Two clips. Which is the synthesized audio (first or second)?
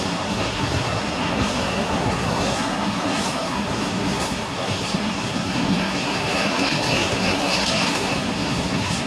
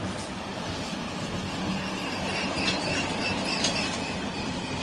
first